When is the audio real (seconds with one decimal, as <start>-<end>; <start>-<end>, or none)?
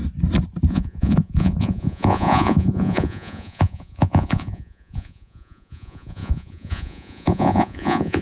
0.0-0.7